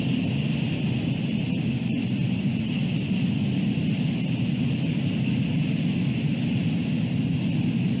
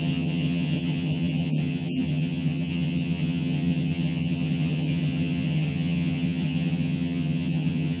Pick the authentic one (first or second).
first